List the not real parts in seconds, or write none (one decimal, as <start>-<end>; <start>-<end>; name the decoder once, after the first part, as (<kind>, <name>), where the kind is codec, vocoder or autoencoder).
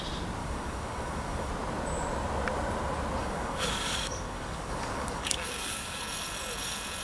0.4-1.5 (codec, DAC); 3.2-6.0